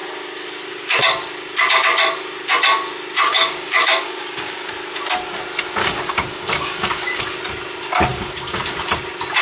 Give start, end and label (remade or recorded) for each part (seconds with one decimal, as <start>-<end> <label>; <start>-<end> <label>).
0.0-3.3 recorded; 3.3-4.7 remade; 4.7-5.8 recorded; 5.8-7.2 remade; 7.2-8.1 recorded; 8.1-8.6 remade; 8.6-9.4 recorded